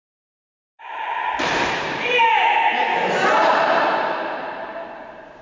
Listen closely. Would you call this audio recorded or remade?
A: remade